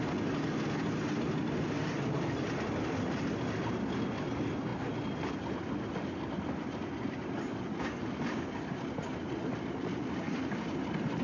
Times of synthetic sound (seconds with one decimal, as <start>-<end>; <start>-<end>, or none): 9.4-9.9